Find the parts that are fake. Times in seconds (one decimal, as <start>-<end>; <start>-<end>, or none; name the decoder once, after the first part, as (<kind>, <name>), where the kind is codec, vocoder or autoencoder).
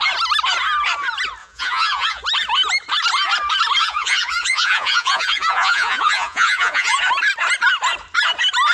1.4-2.2 (vocoder, Vocos); 3.8-7.0